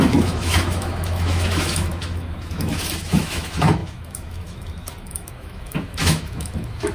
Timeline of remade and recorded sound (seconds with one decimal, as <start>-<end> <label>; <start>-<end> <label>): 0.0-6.9 remade